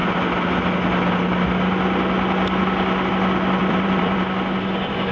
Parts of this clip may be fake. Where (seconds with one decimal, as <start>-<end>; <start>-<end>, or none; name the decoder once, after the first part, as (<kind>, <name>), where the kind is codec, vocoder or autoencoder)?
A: 3.6-4.2 (vocoder, BigVGAN v2)